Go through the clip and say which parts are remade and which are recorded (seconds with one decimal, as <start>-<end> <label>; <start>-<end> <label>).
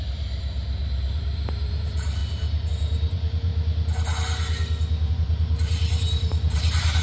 0.0-2.2 remade; 2.2-2.7 recorded; 2.7-3.5 remade; 3.5-5.1 recorded; 5.1-7.0 remade